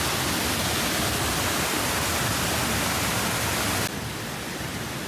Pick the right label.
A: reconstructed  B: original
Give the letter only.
B